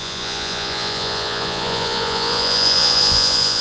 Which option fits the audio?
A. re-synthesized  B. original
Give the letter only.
A